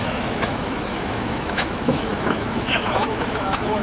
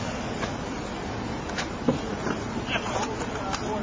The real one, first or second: second